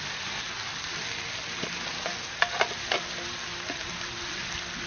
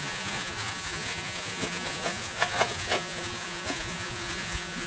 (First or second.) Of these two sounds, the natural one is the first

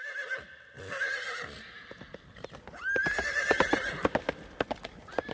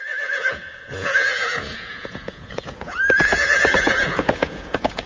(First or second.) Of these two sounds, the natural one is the first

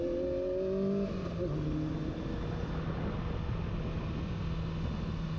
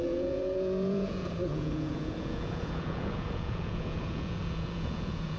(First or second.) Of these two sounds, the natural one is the first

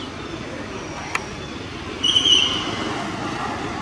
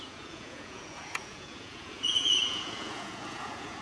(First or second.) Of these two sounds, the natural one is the first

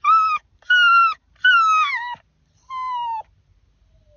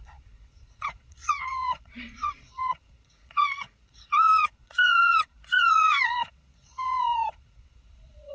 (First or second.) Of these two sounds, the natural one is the first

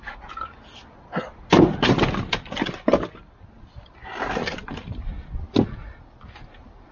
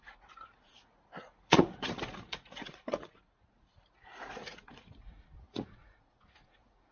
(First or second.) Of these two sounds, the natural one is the first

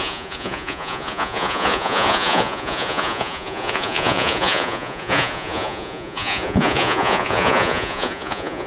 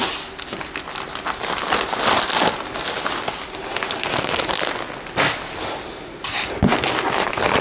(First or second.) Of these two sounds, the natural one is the second